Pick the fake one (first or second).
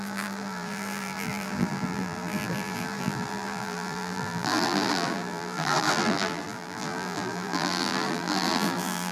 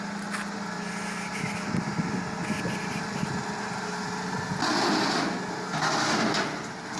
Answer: first